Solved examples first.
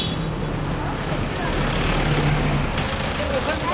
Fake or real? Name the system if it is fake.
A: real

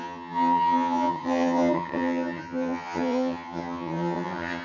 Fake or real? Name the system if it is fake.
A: fake, vocoder, HiFi-GAN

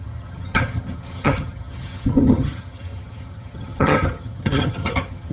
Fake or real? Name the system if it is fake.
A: fake, vocoder, HiFi-GAN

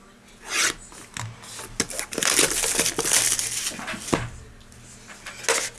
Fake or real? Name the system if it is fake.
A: real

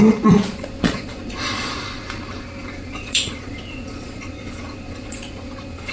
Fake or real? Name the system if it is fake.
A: fake, vocoder, Vocos